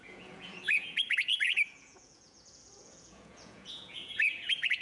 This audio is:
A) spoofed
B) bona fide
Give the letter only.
A